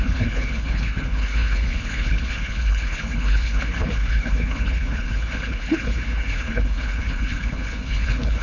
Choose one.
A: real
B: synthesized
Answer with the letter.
B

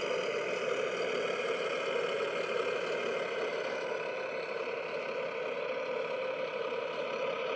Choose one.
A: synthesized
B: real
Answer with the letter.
B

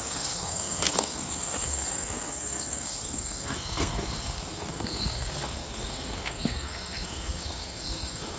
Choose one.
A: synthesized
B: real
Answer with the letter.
A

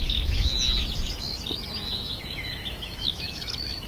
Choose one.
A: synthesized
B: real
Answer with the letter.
A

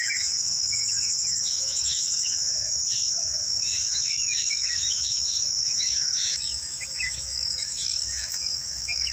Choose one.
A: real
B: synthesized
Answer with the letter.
B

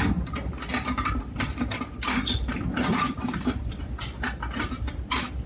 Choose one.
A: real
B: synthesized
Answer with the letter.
A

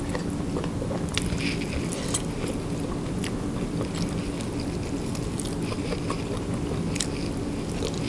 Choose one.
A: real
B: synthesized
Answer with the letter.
A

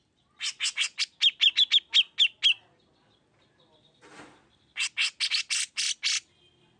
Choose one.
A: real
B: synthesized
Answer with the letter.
A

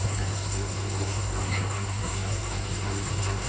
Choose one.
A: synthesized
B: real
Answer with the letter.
A